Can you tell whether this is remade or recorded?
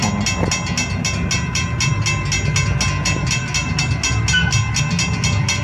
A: recorded